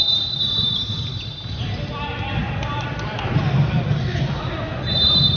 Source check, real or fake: real